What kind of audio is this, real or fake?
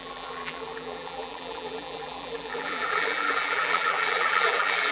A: fake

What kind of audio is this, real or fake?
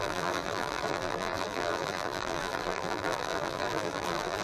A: fake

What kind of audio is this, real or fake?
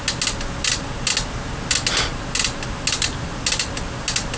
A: real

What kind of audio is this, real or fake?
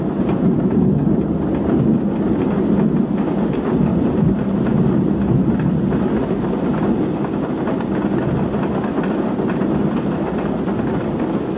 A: real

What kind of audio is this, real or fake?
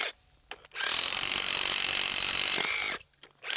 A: real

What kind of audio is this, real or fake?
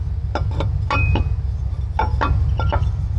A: real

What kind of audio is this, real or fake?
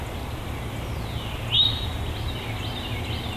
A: real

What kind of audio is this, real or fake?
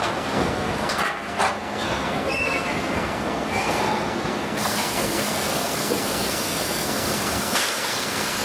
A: fake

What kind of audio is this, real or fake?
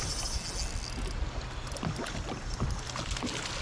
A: real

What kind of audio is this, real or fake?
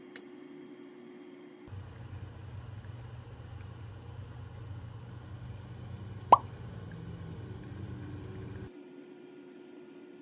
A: real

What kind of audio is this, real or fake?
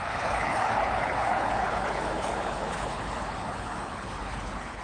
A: fake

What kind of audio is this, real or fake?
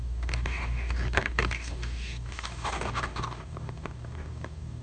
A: fake